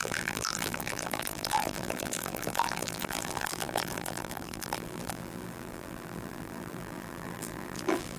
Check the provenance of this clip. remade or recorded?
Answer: remade